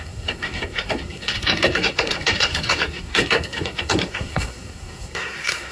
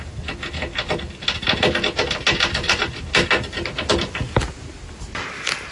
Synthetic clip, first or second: first